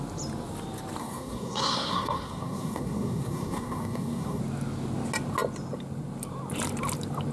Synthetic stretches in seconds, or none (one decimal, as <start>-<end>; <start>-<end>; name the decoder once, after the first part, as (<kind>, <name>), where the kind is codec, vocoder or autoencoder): 1.0-4.4 (codec, SNAC)